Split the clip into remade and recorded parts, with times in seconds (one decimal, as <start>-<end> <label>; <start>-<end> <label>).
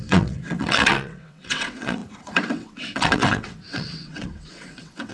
0.0-5.1 remade